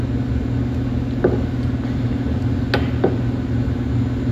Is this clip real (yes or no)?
yes